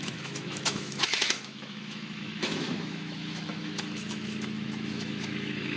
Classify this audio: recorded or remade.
remade